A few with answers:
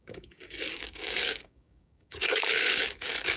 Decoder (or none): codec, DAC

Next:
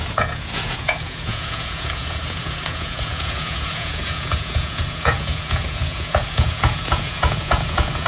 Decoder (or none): vocoder, Vocos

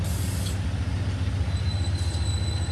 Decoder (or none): none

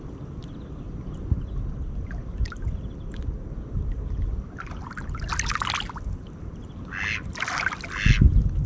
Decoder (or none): none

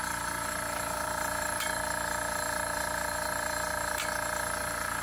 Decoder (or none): vocoder, BigVGAN v2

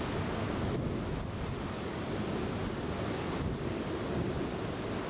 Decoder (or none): none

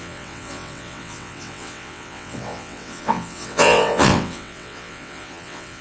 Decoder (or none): vocoder, WaveNeXt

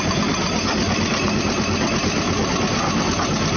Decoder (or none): none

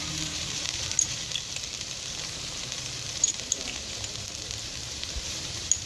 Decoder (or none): vocoder, BigVGAN v2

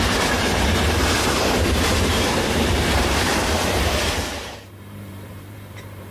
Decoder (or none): vocoder, BigVGAN v2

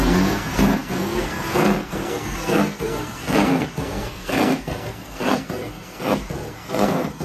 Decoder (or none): codec, SNAC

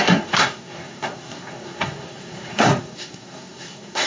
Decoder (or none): codec, SNAC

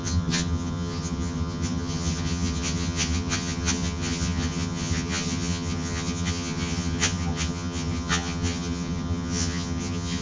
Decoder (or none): vocoder, HiFi-GAN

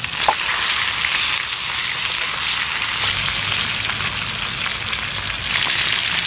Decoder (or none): none